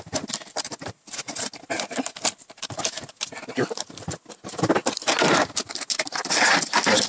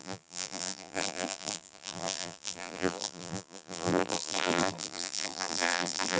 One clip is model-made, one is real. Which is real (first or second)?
first